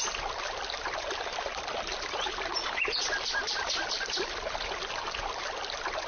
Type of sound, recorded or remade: recorded